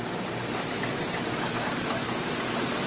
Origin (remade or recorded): recorded